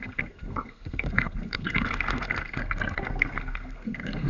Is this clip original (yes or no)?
no